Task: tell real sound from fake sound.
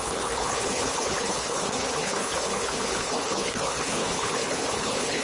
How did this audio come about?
fake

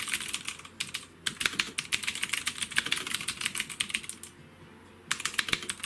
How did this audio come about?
real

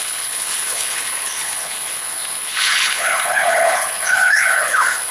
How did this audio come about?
fake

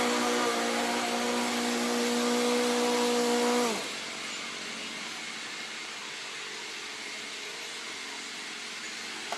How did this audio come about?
real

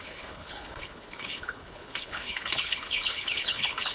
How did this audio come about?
fake